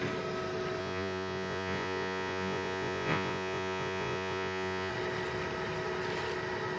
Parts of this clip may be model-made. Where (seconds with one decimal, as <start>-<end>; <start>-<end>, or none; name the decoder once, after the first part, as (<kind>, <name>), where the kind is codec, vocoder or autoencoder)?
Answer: 0.8-4.9 (vocoder, Vocos)